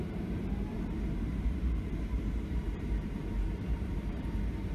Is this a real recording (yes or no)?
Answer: no